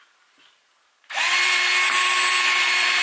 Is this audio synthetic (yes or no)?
no